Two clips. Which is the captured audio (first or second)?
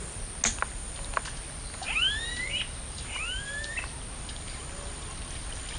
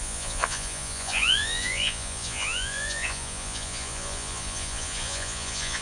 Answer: first